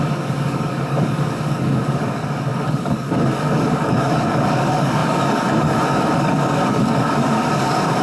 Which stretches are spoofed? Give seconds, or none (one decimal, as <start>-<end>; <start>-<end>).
0.0-8.0